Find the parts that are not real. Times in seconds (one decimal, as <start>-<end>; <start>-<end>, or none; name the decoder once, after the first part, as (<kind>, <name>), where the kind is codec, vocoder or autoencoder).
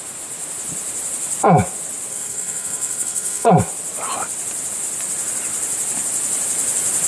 2.1-3.5 (codec, SNAC)